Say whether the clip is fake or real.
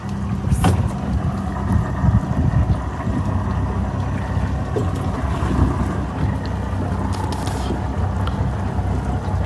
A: real